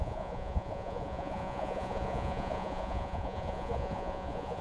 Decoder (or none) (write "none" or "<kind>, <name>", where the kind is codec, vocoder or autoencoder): vocoder, Vocos